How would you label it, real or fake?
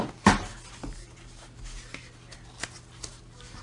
real